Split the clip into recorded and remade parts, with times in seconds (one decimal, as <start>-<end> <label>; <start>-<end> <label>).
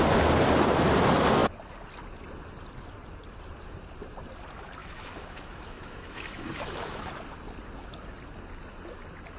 0.0-4.8 recorded; 4.8-7.1 remade; 7.1-9.4 recorded